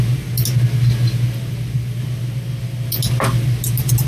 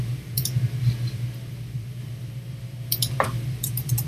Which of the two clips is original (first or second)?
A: first